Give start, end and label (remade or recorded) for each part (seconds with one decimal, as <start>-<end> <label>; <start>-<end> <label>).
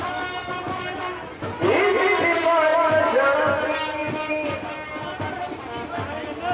0.0-6.5 recorded